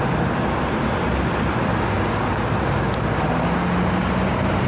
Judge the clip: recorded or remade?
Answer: recorded